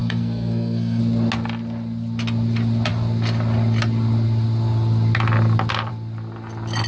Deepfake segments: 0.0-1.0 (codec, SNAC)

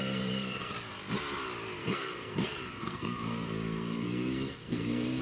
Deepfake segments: 0.0-0.7 (codec, SNAC); 1.8-5.2

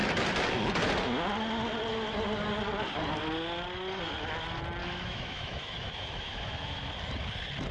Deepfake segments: 4.8-6.9 (autoencoder, DAC-VAE)

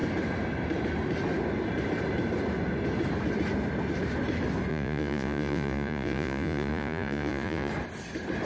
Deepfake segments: 4.7-7.7 (vocoder, Vocos)

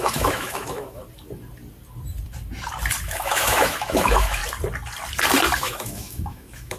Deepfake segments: 0.0-1.0 (autoencoder, DAC-VAE); 3.0-4.4; 5.6-6.8